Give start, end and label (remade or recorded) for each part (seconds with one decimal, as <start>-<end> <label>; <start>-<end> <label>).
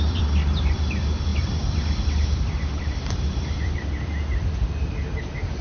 0.0-4.6 remade; 4.6-5.6 recorded